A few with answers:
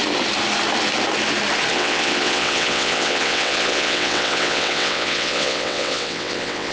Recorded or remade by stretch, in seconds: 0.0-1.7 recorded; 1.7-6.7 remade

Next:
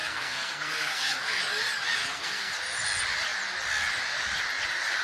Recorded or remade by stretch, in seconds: 0.0-1.4 remade; 1.4-2.0 recorded; 2.0-2.5 remade; 2.5-5.0 recorded

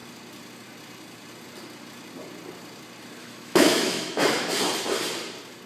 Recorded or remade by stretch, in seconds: 0.0-3.2 recorded; 3.2-4.5 remade; 4.5-5.7 recorded

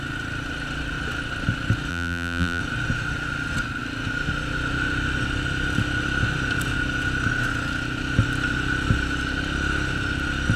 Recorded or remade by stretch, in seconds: 0.0-1.9 recorded; 1.9-2.6 remade; 2.6-10.6 recorded

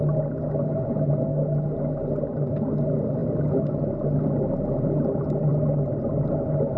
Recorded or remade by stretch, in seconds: 0.0-6.8 recorded